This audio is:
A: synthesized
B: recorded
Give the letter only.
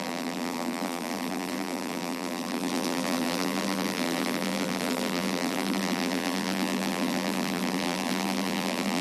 A